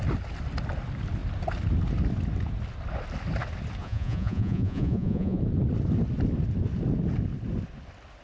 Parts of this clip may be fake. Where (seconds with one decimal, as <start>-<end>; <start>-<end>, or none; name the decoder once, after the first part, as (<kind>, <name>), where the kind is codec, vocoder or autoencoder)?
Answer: 3.8-5.4 (vocoder, Vocos)